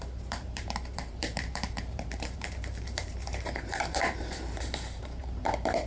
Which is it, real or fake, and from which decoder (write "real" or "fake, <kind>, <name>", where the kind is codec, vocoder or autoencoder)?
fake, vocoder, BigVGAN v2